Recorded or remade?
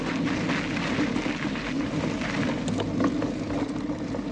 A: recorded